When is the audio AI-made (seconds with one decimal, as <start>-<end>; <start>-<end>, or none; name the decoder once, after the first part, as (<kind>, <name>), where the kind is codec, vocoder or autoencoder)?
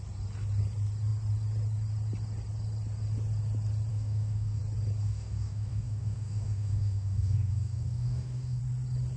3.9-4.6 (codec, DAC); 5.0-8.6